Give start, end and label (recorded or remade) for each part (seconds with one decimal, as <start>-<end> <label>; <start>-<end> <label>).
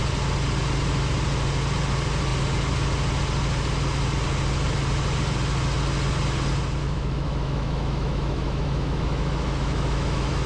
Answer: 0.0-6.8 recorded; 6.8-10.5 remade